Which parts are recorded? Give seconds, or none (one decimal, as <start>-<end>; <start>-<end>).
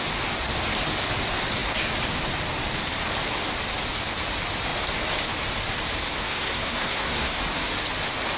0.0-6.3; 7.4-8.4